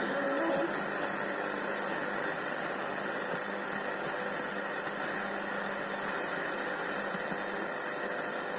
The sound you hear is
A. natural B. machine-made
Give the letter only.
A